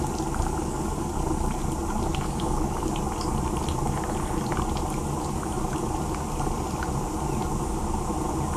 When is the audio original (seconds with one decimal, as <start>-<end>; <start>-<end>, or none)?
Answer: 0.0-0.6; 1.2-2.1; 2.9-8.6